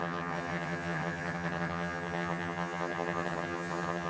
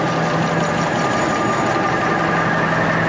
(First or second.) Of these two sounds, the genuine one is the second